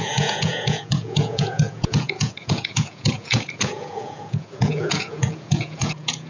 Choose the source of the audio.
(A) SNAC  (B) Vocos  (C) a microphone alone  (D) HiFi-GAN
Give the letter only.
B